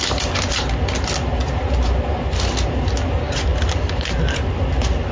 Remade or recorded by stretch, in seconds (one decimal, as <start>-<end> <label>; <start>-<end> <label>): 0.0-5.1 recorded